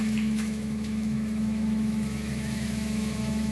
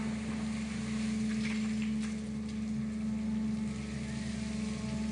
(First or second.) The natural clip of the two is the second